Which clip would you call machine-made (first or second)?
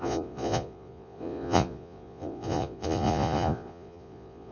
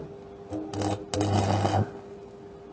first